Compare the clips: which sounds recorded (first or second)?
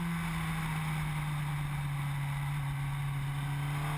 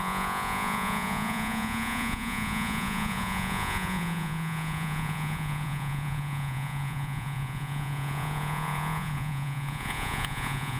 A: first